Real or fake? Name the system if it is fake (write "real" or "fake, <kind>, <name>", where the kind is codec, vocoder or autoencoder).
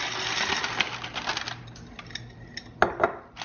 real